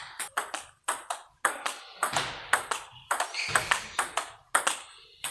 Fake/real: real